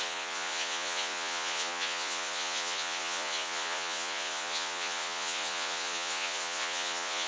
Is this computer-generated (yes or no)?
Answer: yes